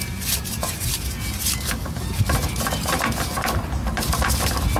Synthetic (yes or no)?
no